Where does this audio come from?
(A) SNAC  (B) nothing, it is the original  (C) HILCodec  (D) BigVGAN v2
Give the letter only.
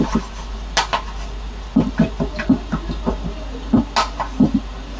B